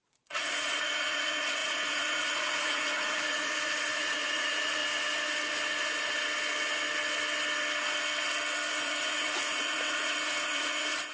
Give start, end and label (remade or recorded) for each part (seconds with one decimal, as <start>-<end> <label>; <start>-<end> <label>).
0.0-4.8 remade; 4.8-8.7 recorded; 8.7-11.1 remade